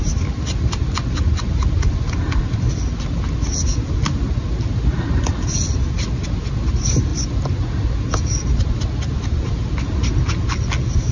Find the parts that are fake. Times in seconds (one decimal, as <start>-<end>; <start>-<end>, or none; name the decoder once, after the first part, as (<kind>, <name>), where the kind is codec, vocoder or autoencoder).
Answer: none